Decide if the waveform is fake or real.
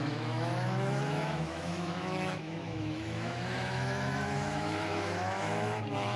fake